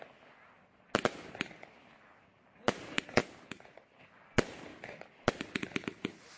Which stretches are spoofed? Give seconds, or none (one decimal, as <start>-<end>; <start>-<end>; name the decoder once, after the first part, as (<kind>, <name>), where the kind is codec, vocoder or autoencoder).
none